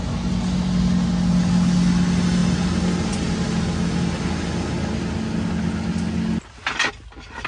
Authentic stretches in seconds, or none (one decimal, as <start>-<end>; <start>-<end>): 0.0-7.5